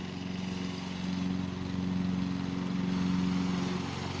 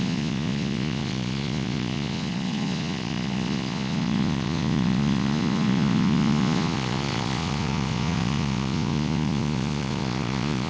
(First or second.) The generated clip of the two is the second